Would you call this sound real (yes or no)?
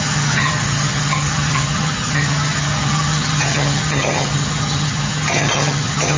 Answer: no